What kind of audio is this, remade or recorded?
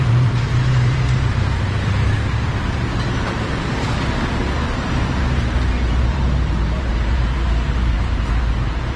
remade